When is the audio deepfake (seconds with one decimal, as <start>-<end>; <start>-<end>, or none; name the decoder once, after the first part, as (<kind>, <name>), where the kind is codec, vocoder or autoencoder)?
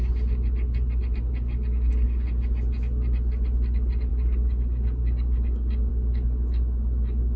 4.1-5.9 (codec, DAC)